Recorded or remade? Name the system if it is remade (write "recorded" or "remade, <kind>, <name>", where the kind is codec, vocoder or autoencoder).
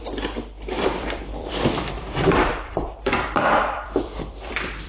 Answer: remade, vocoder, BigVGAN v2